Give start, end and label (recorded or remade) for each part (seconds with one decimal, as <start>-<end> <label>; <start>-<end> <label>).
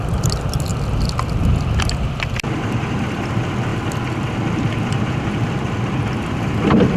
0.0-7.0 recorded